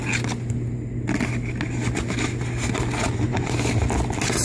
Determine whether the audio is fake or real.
real